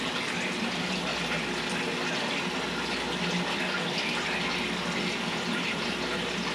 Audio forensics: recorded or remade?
recorded